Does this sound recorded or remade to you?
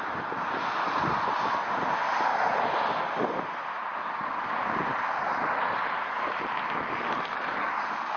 recorded